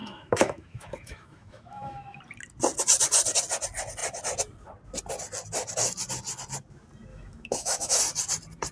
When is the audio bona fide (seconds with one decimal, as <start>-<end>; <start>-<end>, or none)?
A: 2.2-7.1; 8.0-8.7